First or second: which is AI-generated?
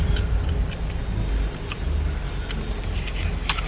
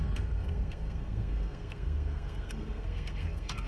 second